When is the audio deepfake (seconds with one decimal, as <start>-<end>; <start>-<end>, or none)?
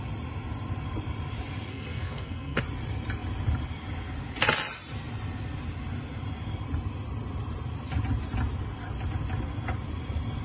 1.7-2.6